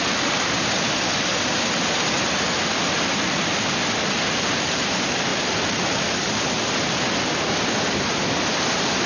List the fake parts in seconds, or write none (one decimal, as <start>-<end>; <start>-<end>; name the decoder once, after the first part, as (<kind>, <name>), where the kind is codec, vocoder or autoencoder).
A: 0.0-5.3 (vocoder, BigVGAN v2); 7.5-9.1